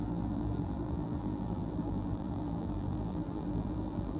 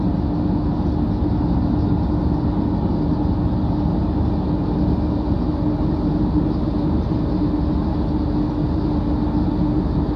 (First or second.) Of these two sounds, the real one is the second